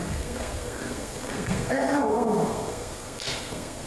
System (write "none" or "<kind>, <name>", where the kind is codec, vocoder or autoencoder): codec, SNAC